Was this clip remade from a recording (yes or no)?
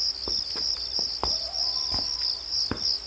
no